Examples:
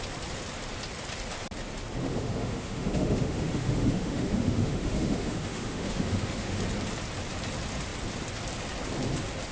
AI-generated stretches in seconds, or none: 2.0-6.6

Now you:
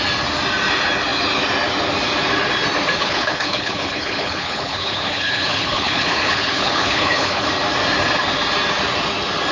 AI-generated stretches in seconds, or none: 3.0-7.5

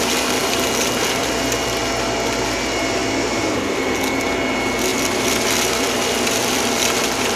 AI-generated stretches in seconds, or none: 0.4-1.4; 4.9-7.4

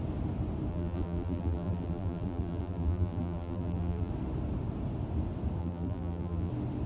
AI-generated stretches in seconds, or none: 0.7-4.1; 5.6-6.5